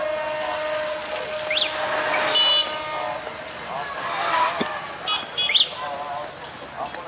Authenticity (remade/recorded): recorded